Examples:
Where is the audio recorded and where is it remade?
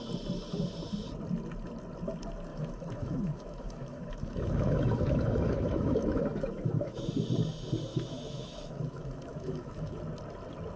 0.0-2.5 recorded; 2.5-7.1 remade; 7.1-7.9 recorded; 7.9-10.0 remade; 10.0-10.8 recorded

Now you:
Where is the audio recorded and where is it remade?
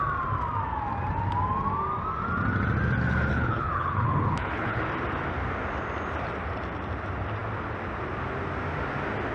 0.0-3.3 recorded; 3.3-4.8 remade; 4.8-9.3 recorded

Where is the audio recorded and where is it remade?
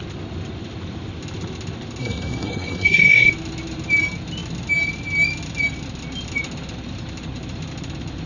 0.0-2.0 recorded; 2.0-3.3 remade; 3.3-8.3 recorded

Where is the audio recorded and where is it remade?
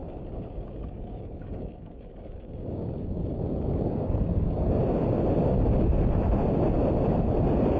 0.0-4.7 remade; 4.7-7.8 recorded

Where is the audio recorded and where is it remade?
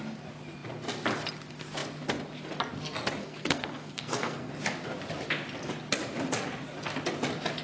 0.0-3.2 recorded; 3.2-4.5 remade; 4.5-7.6 recorded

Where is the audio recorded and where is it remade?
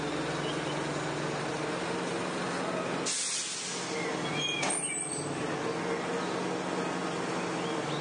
0.0-8.0 recorded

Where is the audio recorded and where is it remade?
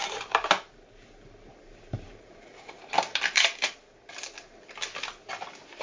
0.0-0.7 remade; 0.7-1.5 recorded; 1.5-3.7 remade; 3.7-5.8 recorded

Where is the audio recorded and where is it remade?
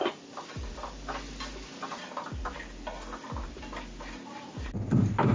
0.0-5.3 recorded